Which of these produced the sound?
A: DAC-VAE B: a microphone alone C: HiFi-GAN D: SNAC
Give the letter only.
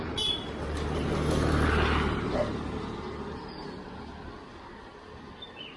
B